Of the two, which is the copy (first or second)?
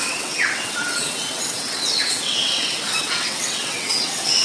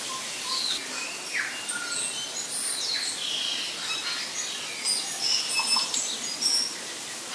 first